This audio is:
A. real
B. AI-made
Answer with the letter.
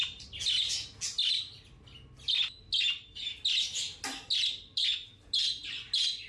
A